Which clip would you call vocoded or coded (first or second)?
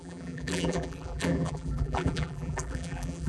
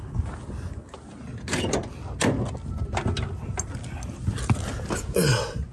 first